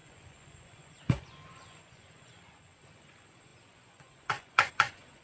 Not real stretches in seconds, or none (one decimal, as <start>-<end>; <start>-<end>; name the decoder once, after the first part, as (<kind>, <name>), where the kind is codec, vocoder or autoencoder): 0.0-5.2 (vocoder, Vocos)